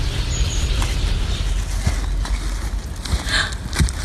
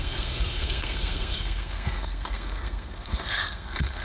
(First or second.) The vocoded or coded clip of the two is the second